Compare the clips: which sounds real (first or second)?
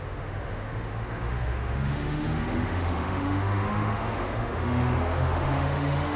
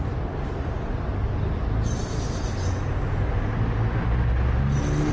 second